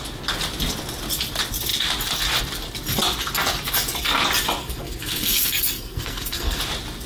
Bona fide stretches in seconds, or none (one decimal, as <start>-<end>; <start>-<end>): 0.0-4.6; 6.6-7.1